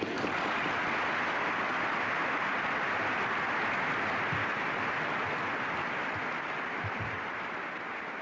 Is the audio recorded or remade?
recorded